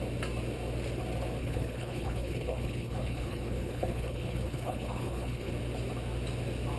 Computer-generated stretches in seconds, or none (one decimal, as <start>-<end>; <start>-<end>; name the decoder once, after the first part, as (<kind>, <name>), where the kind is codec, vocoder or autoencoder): 1.4-5.5 (codec, HILCodec)